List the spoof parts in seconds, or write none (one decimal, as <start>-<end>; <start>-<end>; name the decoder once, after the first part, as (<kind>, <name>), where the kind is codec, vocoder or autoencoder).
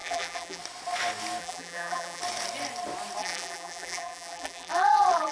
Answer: 0.0-0.6 (vocoder, BigVGAN v2); 1.4-2.2; 3.2-5.3